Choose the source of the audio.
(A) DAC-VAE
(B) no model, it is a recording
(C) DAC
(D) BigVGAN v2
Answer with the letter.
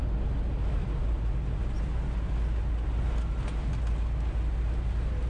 B